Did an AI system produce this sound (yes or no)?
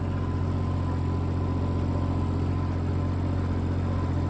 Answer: no